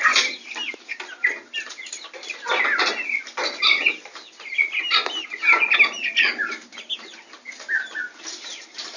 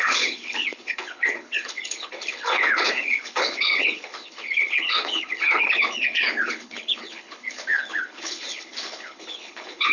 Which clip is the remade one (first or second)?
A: second